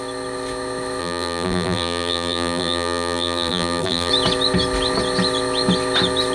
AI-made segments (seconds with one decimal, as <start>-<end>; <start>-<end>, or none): 1.0-4.1